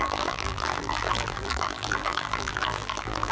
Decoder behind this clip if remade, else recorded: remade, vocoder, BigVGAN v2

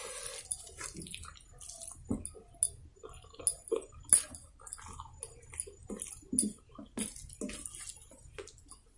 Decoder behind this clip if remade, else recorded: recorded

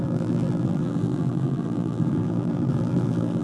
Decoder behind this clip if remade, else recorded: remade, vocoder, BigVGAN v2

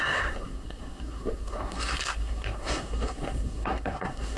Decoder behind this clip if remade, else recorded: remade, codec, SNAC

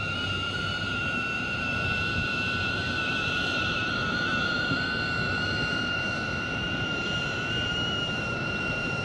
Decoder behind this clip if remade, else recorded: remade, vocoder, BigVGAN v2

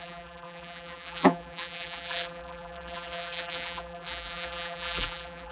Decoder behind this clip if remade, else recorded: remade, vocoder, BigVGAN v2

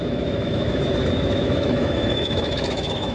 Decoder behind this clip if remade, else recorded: remade, autoencoder, DAC-VAE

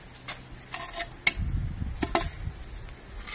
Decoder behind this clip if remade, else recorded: recorded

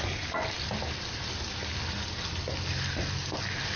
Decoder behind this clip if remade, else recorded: recorded